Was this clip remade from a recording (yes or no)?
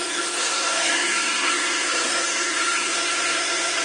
yes